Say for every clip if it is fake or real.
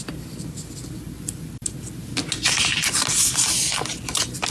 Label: real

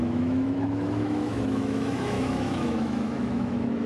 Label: fake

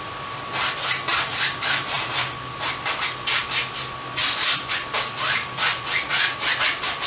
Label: real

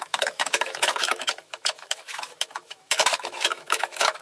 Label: fake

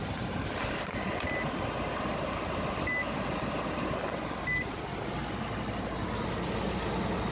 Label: real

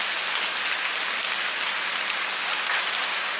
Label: real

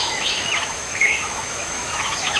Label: fake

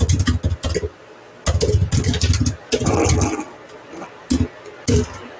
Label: real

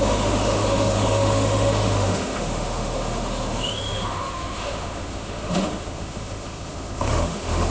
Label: fake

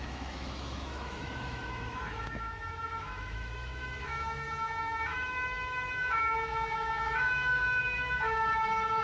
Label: fake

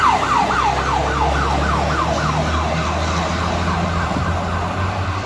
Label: real